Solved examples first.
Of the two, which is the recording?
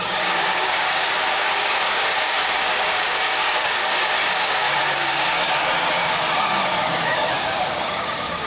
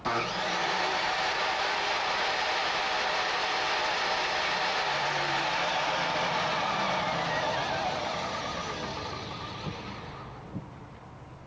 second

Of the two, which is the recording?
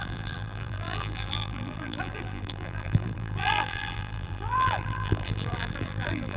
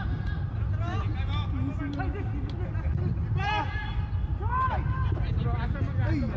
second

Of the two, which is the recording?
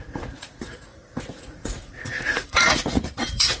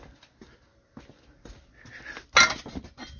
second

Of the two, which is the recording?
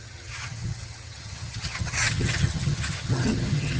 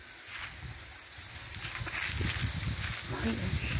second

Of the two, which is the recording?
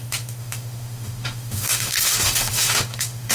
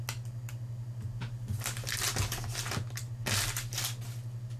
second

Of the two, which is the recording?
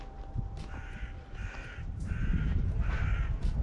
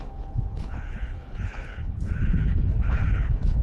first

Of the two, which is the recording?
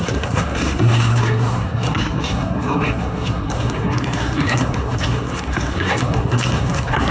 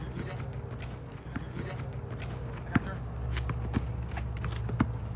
second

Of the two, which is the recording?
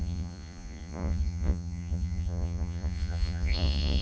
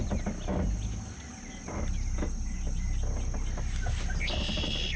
second